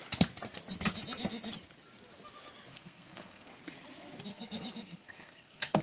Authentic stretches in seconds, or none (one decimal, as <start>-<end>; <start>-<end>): 0.0-2.7; 3.5-4.3